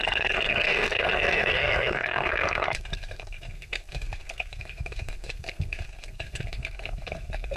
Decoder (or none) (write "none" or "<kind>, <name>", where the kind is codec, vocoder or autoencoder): codec, SNAC